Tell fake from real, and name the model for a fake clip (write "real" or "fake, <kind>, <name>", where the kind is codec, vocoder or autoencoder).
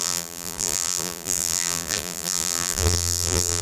fake, vocoder, BigVGAN v2